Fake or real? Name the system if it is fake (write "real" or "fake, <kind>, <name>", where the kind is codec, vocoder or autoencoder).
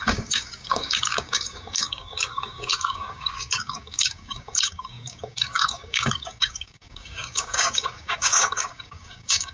fake, codec, DAC